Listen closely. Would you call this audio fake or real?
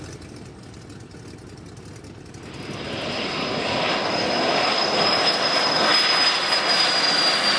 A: real